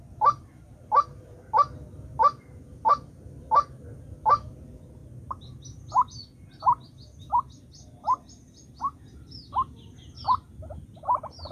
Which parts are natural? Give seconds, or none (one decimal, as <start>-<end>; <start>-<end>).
0.0-11.5